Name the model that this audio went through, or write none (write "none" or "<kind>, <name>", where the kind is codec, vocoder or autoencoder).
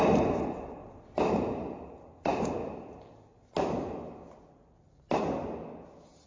none